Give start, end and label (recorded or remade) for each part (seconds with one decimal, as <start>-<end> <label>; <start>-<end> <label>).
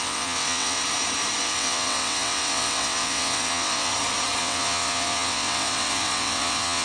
0.0-0.8 remade; 0.8-1.4 recorded; 1.4-3.9 remade; 3.9-4.4 recorded; 4.4-6.8 remade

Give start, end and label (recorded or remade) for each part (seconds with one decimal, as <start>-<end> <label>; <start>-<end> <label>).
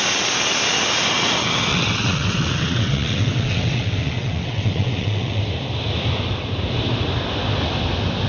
0.0-1.7 recorded; 1.7-5.4 remade; 5.4-8.3 recorded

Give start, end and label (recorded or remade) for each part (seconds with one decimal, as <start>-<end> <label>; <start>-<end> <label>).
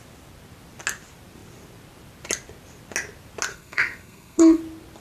0.0-3.5 recorded; 3.5-4.6 remade; 4.6-5.0 recorded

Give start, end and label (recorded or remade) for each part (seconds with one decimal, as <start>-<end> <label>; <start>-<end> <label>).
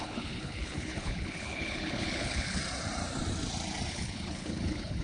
0.0-2.6 remade; 2.6-3.9 recorded; 3.9-5.0 remade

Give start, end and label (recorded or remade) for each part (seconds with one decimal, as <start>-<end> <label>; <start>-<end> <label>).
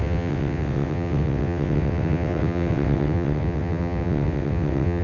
0.0-5.0 remade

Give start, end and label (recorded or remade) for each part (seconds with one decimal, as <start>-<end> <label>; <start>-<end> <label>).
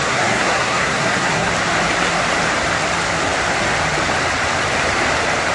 0.0-1.5 remade; 1.5-5.5 recorded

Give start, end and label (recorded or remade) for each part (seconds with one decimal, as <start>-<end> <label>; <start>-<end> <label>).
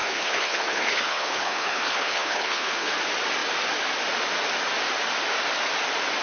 0.0-2.9 remade; 2.9-6.2 recorded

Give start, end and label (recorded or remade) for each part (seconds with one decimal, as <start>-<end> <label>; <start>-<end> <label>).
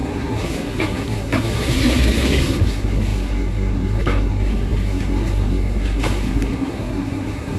0.0-7.6 remade